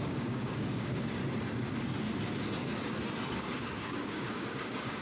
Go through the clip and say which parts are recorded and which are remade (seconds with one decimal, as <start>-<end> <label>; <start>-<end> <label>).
0.0-1.2 remade; 1.2-3.6 recorded; 3.6-5.0 remade